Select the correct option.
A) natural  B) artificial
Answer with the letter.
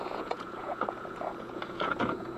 B